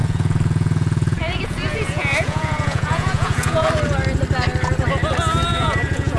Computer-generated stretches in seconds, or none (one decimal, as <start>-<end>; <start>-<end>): 0.0-3.7; 5.5-6.2